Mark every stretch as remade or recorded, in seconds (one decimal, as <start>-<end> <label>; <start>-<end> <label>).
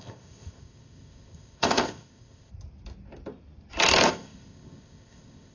0.0-2.5 remade; 2.5-4.1 recorded; 4.1-5.5 remade